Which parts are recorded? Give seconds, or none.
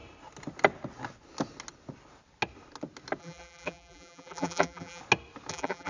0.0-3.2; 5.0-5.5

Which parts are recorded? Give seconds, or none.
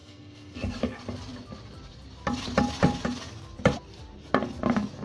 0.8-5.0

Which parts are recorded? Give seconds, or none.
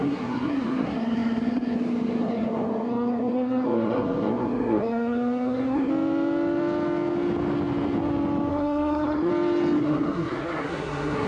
5.9-8.5; 9.3-9.8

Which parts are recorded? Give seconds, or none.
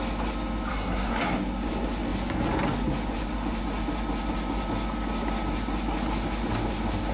0.0-0.7; 1.2-7.1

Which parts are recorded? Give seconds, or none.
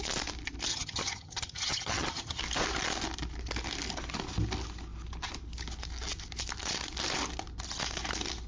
0.0-0.7; 2.4-8.5